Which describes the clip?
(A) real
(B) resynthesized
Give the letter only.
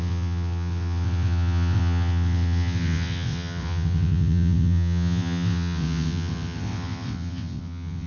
B